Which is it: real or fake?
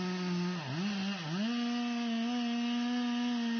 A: real